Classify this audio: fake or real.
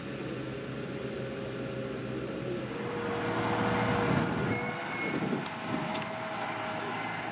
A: real